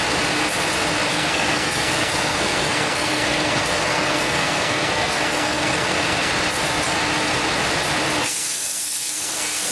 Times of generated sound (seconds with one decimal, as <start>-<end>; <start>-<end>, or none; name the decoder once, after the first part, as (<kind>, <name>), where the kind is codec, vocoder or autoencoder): 1.1-6.3 (codec, SNAC); 8.2-9.7